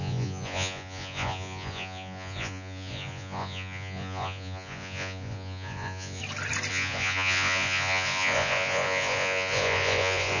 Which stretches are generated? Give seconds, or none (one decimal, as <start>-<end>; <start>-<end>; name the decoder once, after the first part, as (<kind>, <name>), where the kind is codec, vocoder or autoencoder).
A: 0.0-6.2 (vocoder, Vocos); 6.7-10.4